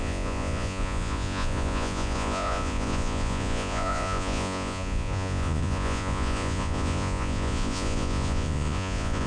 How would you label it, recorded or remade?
remade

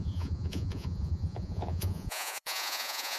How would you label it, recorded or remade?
remade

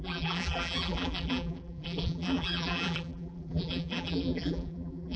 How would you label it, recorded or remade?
remade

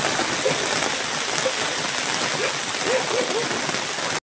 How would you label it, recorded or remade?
recorded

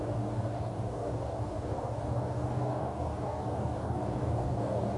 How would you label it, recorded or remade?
remade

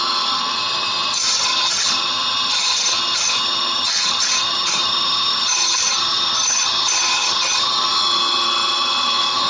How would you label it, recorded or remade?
remade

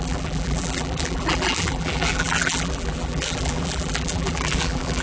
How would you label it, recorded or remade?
remade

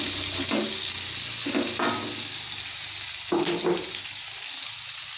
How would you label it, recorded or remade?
recorded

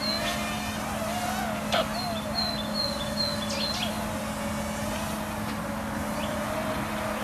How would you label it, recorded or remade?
recorded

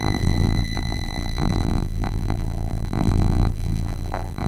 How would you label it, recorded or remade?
remade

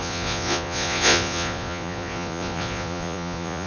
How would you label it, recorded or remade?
remade